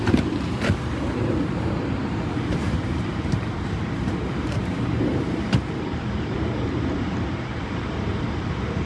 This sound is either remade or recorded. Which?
remade